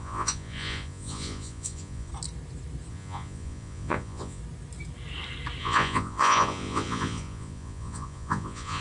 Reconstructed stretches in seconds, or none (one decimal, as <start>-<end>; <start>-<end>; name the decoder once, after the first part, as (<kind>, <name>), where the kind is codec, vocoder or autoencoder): 0.0-2.1 (vocoder, Vocos); 2.9-4.4; 5.6-8.8